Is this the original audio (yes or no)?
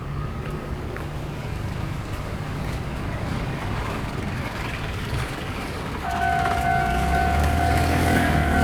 no